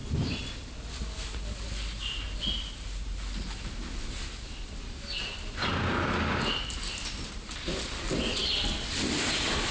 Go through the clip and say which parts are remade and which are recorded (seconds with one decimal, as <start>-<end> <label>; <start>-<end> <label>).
0.0-5.2 recorded; 5.2-9.7 remade